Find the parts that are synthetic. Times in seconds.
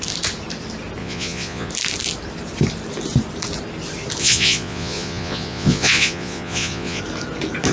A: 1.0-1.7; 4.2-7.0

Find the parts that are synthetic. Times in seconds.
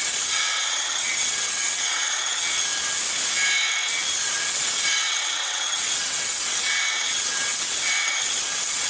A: 0.0-2.7; 4.1-8.9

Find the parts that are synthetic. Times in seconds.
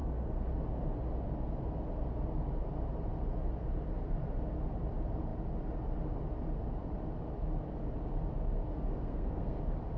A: 8.7-9.6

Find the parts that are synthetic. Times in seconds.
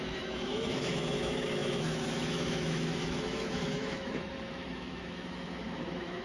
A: 0.0-6.2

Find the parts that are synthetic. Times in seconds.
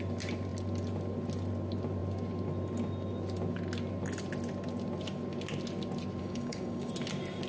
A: 6.2-6.9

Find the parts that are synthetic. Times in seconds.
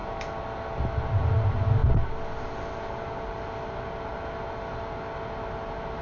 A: none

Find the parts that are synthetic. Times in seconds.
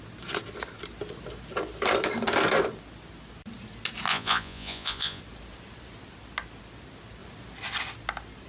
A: 4.1-5.2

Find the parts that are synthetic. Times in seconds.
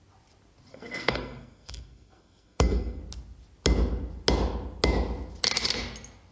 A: 0.7-3.0